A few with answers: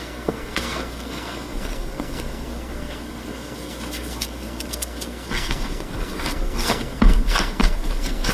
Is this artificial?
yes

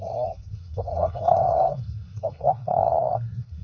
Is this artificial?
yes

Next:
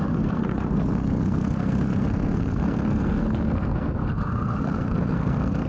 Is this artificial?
yes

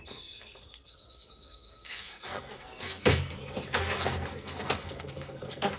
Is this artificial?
yes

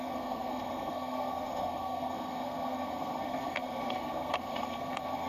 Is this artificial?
yes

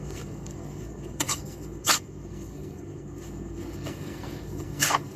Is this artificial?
yes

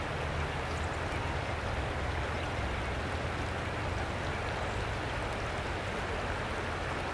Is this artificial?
no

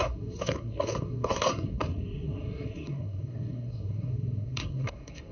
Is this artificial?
yes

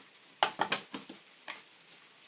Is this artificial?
no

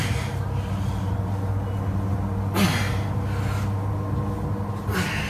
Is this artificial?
no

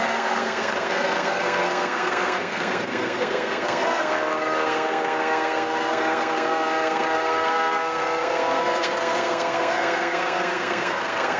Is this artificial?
yes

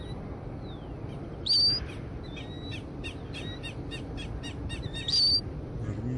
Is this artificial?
no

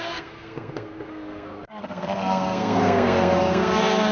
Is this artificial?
yes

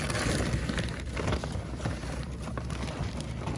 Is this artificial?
no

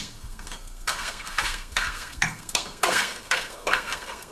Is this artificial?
yes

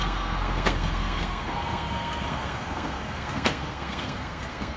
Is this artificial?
yes